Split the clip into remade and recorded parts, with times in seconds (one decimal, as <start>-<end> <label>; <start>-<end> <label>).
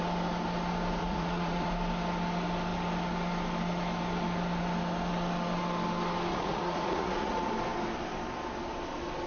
0.0-1.0 recorded; 1.0-1.7 remade; 1.7-6.3 recorded; 6.3-7.5 remade; 7.5-9.3 recorded